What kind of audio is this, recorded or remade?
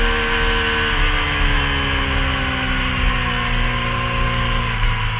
recorded